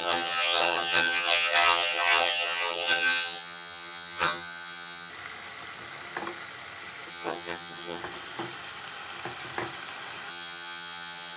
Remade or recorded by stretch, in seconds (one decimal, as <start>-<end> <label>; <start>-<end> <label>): 0.0-5.1 remade; 5.1-7.1 recorded; 7.1-8.0 remade; 8.0-10.3 recorded; 10.3-11.4 remade

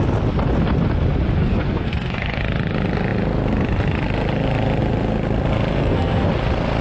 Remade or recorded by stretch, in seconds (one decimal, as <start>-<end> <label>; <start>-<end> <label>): 0.0-1.4 recorded; 1.4-2.4 remade; 2.4-5.7 recorded; 5.7-6.3 remade; 6.3-6.8 recorded

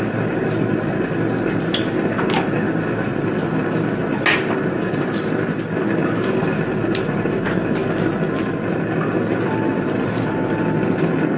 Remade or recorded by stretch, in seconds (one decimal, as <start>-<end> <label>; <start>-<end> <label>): 0.0-11.4 recorded

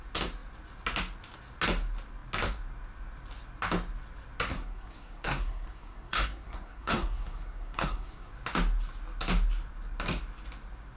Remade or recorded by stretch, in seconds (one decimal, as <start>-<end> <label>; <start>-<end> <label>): 0.0-4.5 recorded; 4.5-8.3 remade; 8.3-11.0 recorded

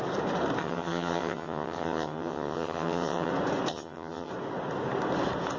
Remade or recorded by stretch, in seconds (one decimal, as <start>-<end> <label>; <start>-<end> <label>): 0.0-0.6 recorded; 0.6-3.3 remade; 3.3-3.7 recorded; 3.7-4.3 remade; 4.3-5.6 recorded

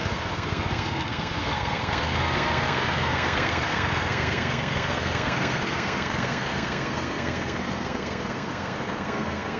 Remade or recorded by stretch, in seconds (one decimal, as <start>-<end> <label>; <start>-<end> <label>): 0.0-9.6 remade

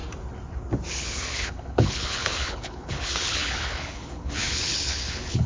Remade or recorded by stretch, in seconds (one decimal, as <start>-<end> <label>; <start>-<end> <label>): 0.0-0.9 recorded; 0.9-5.5 remade